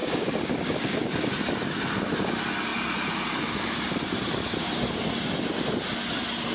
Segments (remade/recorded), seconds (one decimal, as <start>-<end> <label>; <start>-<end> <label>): 0.0-1.3 remade; 1.3-4.5 recorded; 4.5-5.1 remade; 5.1-6.5 recorded